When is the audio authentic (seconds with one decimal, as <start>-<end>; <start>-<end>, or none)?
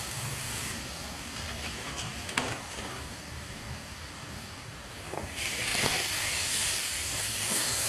none